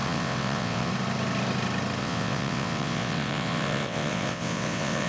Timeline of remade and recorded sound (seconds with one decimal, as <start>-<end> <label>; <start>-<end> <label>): 0.0-0.9 remade; 0.9-2.0 recorded; 2.0-5.1 remade